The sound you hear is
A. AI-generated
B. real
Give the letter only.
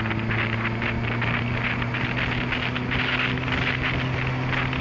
B